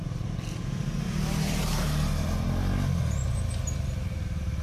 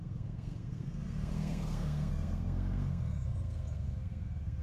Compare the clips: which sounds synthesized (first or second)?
second